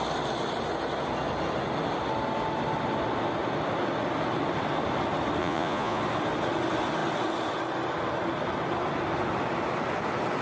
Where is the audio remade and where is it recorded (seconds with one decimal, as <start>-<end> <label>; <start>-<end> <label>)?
0.0-5.4 recorded; 5.4-6.0 remade; 6.0-10.4 recorded